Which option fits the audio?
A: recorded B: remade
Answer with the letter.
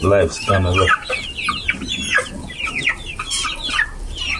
A